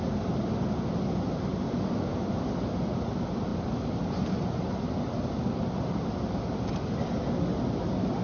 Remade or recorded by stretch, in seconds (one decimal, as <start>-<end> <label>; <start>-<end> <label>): 0.0-8.2 recorded